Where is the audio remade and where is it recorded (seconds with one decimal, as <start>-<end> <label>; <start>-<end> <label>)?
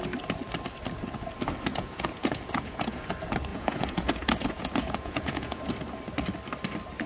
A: 0.0-1.7 recorded; 1.7-3.1 remade; 3.1-3.5 recorded; 3.5-5.6 remade; 5.6-7.1 recorded